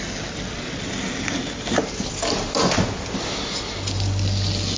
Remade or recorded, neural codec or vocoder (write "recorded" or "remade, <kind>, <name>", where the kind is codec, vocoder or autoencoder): recorded